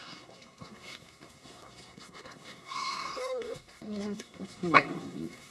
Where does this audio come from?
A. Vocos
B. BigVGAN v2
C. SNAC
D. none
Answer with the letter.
C